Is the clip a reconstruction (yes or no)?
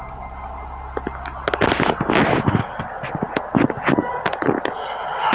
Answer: no